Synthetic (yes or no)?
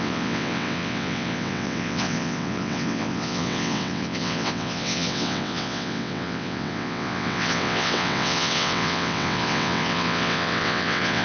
yes